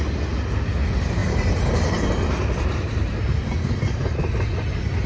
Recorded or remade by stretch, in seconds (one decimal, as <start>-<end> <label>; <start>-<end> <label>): 0.0-1.2 recorded; 1.2-4.3 remade; 4.3-5.1 recorded